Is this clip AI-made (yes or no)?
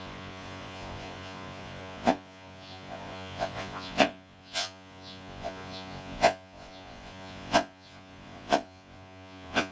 yes